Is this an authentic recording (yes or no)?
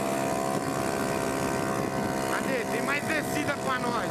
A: yes